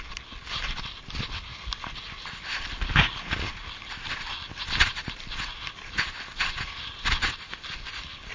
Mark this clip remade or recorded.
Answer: recorded